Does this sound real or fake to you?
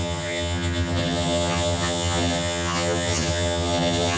fake